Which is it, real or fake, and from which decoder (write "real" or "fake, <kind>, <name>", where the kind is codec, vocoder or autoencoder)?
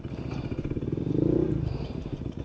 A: real